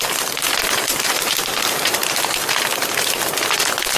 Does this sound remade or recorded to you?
remade